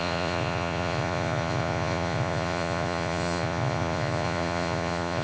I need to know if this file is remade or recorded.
remade